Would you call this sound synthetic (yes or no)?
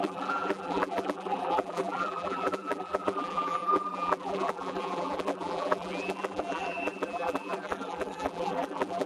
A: yes